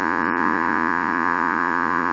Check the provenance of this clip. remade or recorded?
remade